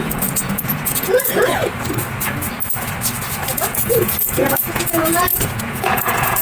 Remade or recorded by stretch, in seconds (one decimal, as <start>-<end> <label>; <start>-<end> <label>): 0.0-1.6 remade; 1.6-3.5 recorded; 3.5-6.4 remade